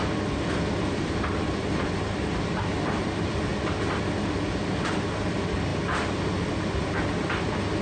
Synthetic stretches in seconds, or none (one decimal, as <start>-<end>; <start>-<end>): 0.0-3.5; 4.6-5.7